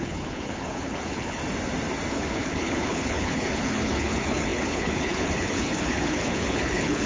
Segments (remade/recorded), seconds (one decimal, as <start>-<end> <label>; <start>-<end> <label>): 0.0-1.4 remade; 1.4-2.1 recorded; 2.1-7.1 remade